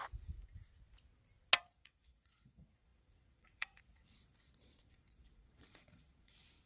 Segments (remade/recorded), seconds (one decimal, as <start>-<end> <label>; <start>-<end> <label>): 0.0-1.6 recorded; 1.6-6.7 remade